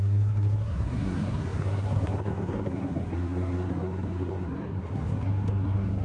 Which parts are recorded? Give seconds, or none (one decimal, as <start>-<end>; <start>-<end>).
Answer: none